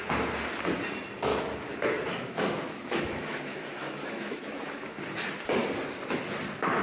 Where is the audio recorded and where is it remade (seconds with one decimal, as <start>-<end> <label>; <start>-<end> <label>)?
0.0-1.3 recorded; 1.3-5.0 remade; 5.0-6.8 recorded